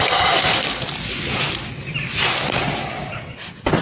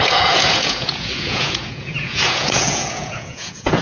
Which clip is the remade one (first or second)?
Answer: second